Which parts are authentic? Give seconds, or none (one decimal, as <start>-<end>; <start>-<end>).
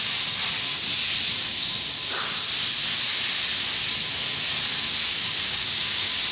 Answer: 0.0-1.4; 2.4-5.0